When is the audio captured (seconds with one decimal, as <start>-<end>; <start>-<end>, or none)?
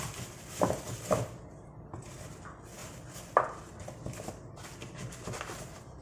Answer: 0.0-6.0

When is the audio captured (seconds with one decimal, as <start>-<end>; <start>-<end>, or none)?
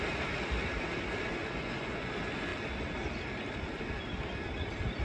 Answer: 0.0-1.4; 2.1-5.0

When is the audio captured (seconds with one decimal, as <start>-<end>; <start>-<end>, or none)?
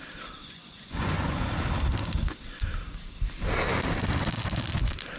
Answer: 0.0-0.4; 1.5-5.2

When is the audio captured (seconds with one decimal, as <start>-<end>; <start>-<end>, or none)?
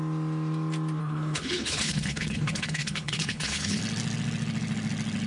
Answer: 0.0-1.0; 3.8-5.3